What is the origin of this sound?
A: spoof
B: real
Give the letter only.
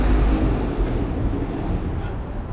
B